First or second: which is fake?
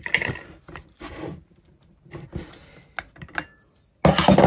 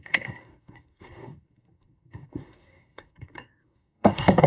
second